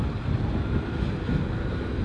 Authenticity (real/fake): real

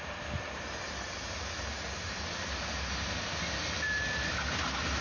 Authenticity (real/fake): real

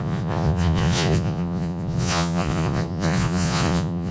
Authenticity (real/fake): fake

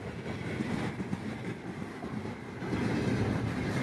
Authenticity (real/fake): real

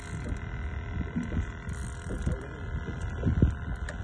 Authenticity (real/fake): real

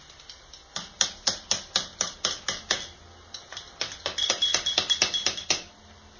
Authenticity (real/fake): real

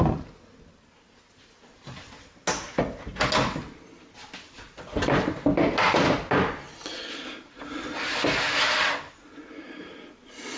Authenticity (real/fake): real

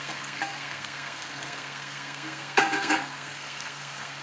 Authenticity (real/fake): fake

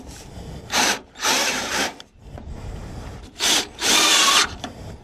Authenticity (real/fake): fake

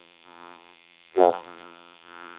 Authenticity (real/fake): fake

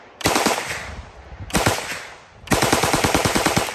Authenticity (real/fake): fake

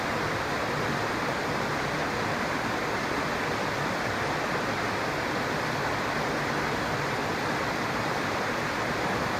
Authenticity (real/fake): fake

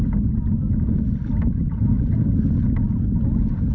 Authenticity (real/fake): real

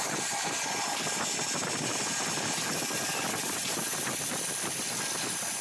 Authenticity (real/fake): real